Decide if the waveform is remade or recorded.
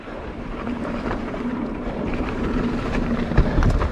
remade